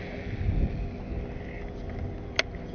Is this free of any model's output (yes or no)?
yes